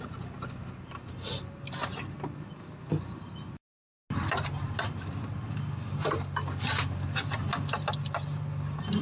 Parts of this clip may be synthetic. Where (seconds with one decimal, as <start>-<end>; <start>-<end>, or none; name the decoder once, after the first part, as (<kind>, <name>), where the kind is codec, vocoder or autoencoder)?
none